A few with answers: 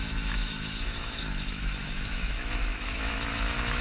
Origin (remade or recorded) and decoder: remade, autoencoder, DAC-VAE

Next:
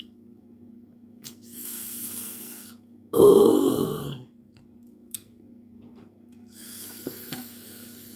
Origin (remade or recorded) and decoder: remade, codec, SNAC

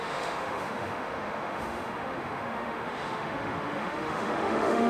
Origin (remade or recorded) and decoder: remade, autoencoder, DAC-VAE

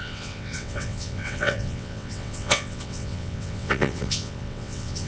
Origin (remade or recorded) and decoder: remade, vocoder, WaveNeXt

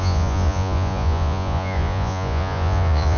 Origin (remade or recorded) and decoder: remade, vocoder, Vocos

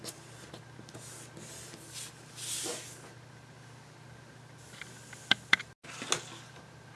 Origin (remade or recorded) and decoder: recorded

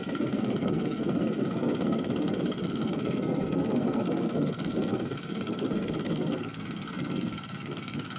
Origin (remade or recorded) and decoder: remade, codec, SNAC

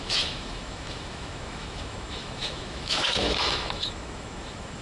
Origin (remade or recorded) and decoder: remade, autoencoder, DAC-VAE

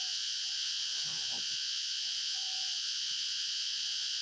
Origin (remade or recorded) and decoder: remade, vocoder, Vocos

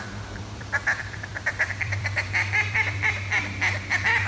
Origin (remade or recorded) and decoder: remade, vocoder, BigVGAN v2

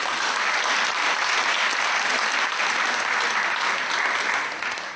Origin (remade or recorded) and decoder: recorded